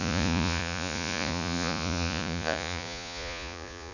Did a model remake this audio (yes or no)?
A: yes